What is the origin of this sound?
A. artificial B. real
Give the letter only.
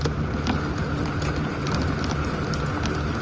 B